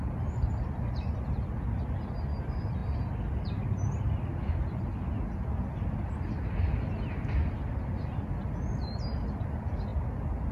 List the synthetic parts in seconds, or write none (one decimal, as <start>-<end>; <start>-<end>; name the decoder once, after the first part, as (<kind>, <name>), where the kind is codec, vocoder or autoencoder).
none